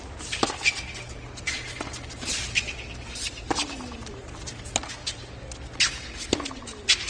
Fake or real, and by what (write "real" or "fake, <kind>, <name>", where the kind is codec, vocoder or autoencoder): real